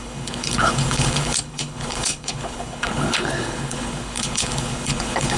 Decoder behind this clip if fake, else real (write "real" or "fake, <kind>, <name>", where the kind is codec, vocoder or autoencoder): fake, codec, HILCodec